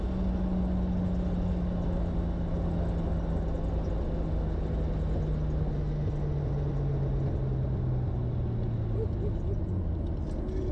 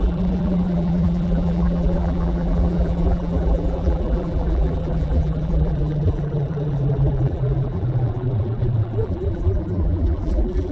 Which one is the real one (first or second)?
first